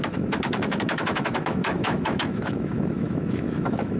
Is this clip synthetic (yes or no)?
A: yes